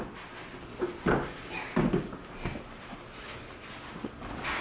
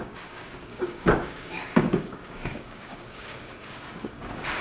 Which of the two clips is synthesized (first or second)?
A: second